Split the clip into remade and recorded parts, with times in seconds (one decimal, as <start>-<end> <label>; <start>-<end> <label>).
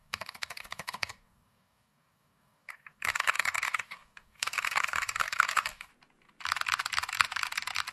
0.0-5.9 remade; 5.9-7.9 recorded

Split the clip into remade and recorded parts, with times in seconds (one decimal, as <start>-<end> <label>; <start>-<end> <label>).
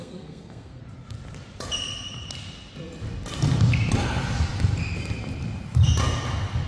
0.0-0.8 remade; 0.8-6.7 recorded